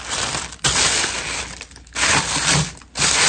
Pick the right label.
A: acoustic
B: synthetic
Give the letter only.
A